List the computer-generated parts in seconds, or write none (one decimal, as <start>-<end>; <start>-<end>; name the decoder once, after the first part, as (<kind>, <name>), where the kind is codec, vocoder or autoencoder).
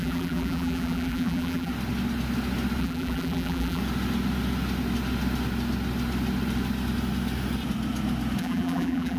0.0-1.7 (vocoder, BigVGAN v2); 2.8-3.8; 8.4-9.2